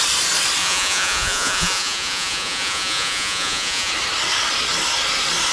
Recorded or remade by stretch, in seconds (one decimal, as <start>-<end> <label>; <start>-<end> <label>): 0.0-0.6 recorded; 0.6-3.9 remade; 3.9-5.5 recorded